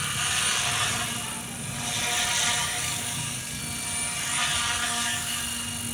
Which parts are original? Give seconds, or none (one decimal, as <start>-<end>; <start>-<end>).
0.0-2.6; 3.6-4.8; 5.4-5.9